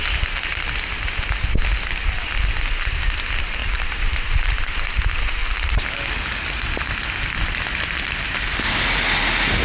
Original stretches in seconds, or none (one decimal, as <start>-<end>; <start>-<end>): 0.0-0.5; 1.2-3.6; 5.0-9.6